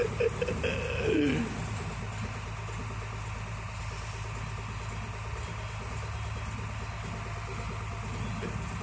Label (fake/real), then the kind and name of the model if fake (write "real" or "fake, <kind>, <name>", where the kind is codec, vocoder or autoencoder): real